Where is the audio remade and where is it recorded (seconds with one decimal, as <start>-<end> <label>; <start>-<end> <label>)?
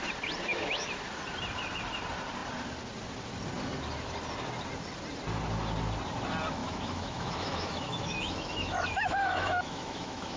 0.0-0.5 recorded; 0.5-1.0 remade; 1.0-6.6 recorded; 6.6-10.4 remade